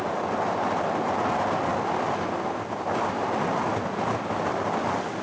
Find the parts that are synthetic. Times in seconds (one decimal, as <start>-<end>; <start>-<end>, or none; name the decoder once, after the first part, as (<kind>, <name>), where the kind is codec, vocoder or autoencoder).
none